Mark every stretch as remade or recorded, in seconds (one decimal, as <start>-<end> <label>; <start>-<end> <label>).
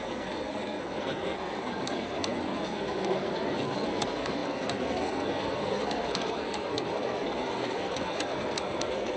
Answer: 0.0-9.2 remade